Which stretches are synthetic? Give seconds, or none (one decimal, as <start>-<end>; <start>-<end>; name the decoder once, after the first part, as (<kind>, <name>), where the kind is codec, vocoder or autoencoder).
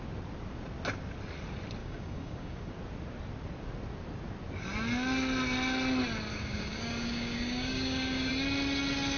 1.8-2.7 (codec, DAC); 6.3-8.3